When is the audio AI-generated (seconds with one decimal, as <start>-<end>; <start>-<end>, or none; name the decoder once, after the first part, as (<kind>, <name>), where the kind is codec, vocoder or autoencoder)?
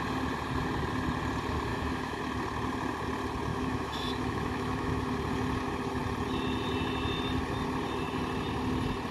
1.7-2.2 (autoencoder, DAC-VAE); 3.5-5.0